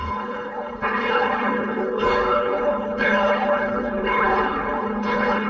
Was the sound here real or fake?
fake